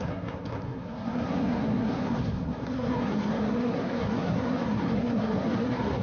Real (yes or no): no